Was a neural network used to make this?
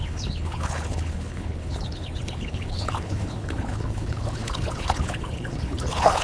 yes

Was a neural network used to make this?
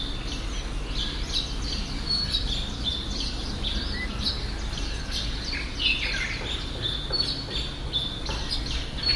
no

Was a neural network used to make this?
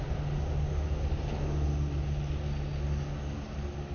no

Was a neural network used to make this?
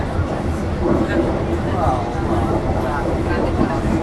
no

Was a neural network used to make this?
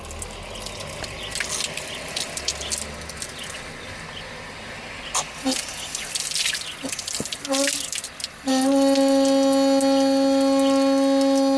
no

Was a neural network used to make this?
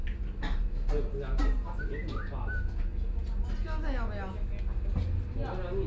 no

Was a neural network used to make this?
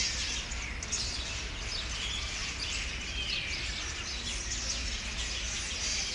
no